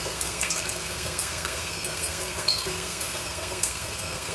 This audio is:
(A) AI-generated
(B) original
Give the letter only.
A